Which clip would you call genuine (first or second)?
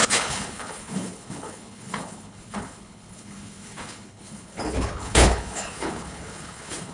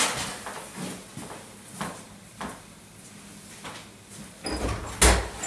second